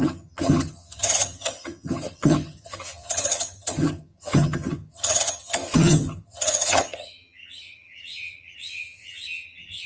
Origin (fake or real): fake